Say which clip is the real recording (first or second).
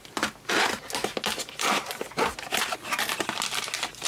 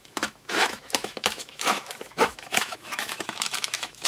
first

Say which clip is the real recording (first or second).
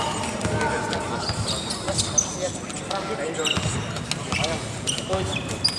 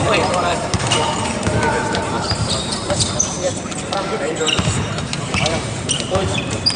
first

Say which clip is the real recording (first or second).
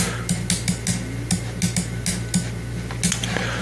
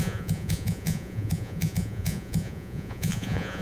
first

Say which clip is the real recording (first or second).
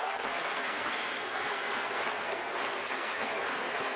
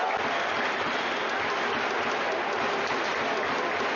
second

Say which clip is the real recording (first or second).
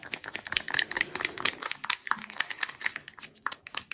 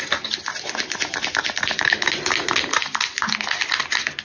second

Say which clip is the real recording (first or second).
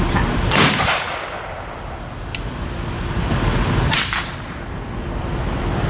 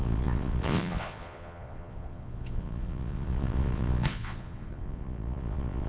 first